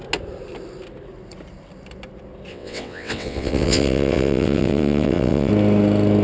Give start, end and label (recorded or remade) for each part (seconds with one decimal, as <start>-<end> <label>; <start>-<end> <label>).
0.0-2.5 recorded; 2.5-5.5 remade; 5.5-6.2 recorded